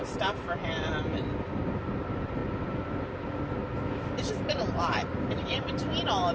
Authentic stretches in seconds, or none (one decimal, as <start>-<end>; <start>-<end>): 0.9-1.9; 2.4-4.3